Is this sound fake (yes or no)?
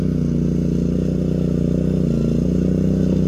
no